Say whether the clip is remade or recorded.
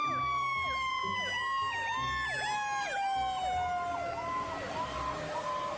recorded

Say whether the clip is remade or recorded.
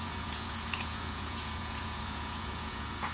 remade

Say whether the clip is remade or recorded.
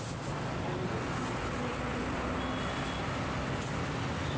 recorded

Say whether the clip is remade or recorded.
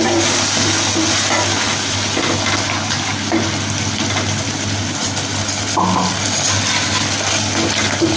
recorded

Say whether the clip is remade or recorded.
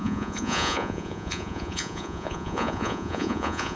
remade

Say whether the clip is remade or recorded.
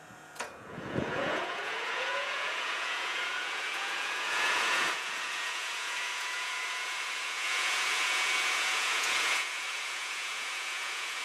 remade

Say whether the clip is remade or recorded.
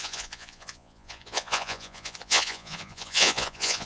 remade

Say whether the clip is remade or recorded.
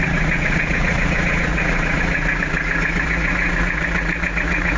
remade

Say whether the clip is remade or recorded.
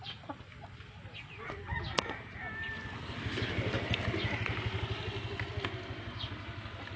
recorded